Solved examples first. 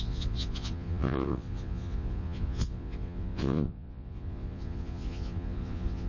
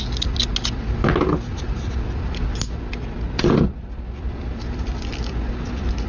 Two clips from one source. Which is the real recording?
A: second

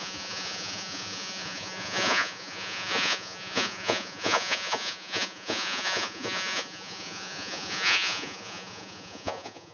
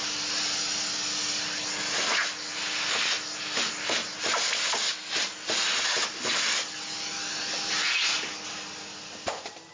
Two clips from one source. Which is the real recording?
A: second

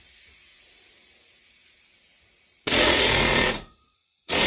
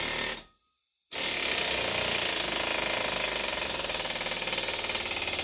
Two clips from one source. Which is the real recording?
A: second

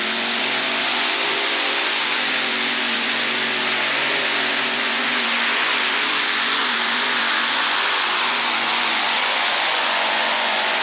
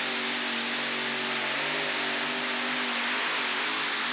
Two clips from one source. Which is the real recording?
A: second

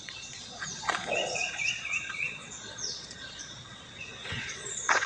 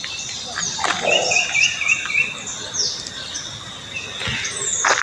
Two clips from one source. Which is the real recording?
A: second